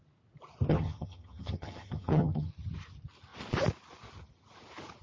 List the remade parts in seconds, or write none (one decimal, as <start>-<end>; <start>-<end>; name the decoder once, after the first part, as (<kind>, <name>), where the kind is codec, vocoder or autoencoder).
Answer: 0.7-2.5 (vocoder, HiFi-GAN)